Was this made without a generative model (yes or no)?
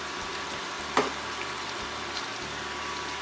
yes